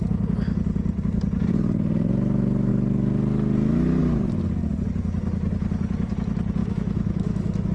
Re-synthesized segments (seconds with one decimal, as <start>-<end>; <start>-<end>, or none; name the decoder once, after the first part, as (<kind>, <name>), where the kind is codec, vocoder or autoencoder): 6.6-7.7 (autoencoder, DAC-VAE)